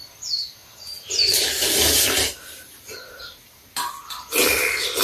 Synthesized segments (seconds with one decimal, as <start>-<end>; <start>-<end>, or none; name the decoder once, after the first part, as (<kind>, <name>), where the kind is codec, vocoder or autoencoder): 0.6-3.6 (vocoder, BigVGAN v2)